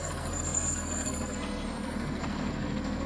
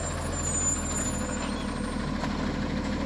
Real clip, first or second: second